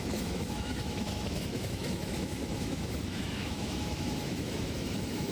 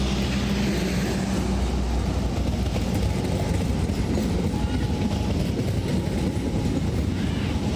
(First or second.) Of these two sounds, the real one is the second